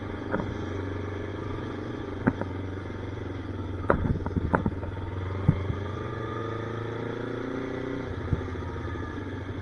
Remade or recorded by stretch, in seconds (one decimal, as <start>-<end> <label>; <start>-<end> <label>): 0.0-6.4 remade; 6.4-9.1 recorded; 9.1-9.6 remade